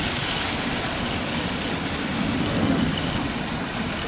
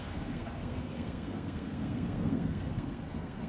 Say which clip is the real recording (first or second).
first